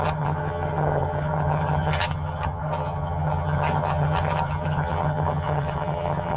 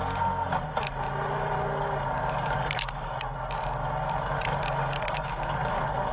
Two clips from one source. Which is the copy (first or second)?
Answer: first